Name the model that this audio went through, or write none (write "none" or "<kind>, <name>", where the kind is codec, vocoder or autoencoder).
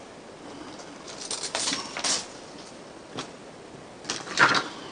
none